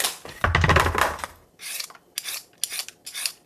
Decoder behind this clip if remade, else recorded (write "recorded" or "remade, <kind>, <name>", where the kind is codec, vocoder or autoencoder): recorded